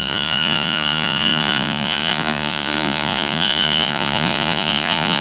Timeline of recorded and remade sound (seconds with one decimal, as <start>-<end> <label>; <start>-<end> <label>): 0.0-5.2 remade